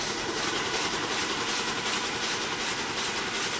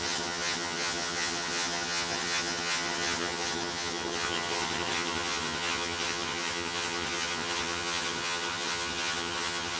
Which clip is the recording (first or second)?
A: first